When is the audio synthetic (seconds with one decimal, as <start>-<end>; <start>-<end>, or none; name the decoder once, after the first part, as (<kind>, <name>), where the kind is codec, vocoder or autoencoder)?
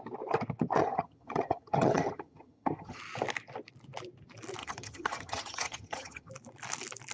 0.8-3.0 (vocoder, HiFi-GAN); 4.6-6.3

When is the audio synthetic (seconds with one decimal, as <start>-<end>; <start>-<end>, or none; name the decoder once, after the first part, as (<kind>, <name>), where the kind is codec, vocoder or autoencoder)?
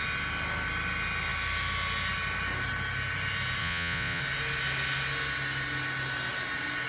3.6-4.2 (vocoder, Vocos)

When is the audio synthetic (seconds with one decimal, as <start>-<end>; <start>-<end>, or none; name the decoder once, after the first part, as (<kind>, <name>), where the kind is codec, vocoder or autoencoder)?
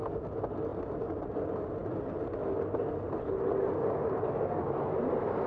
none